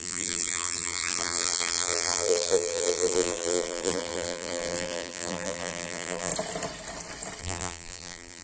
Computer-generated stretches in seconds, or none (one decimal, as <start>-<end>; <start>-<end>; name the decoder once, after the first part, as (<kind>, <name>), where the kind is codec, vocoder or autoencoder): 0.0-6.3 (vocoder, BigVGAN v2); 7.4-8.4